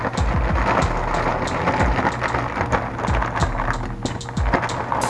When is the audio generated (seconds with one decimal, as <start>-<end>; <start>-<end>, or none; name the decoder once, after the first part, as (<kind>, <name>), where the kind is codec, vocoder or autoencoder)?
none